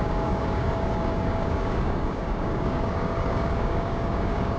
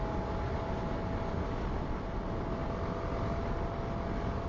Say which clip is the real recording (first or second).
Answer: second